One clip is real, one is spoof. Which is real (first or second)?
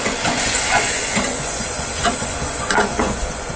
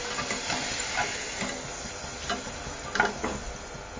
second